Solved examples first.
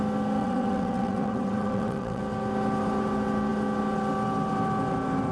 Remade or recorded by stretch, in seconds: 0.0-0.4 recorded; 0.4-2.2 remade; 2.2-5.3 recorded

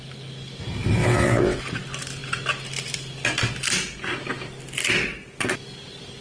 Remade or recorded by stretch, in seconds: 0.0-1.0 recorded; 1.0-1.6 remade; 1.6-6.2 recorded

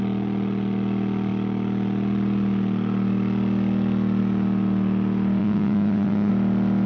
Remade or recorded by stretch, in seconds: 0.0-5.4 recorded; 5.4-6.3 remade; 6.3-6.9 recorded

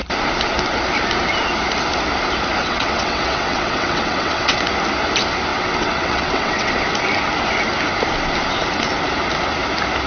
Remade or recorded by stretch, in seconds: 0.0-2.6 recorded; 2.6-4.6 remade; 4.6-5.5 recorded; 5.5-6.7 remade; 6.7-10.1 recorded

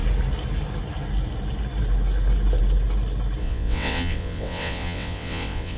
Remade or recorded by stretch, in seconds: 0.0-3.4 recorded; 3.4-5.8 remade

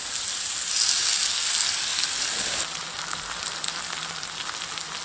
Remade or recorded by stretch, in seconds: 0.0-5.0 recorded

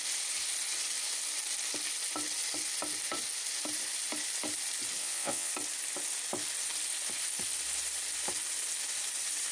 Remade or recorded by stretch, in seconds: 0.0-5.0 recorded; 5.0-5.5 remade; 5.5-9.5 recorded